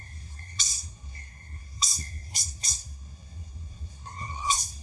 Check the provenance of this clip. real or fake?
fake